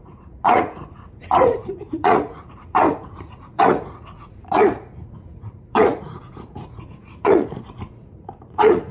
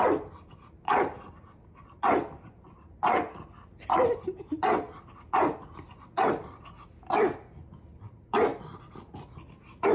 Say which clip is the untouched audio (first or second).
second